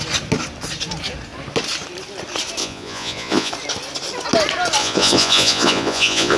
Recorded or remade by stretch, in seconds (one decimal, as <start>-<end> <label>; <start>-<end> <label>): 0.0-2.6 recorded; 2.6-3.5 remade; 3.5-4.8 recorded; 4.8-6.4 remade